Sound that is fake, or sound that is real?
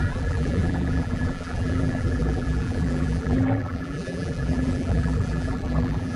fake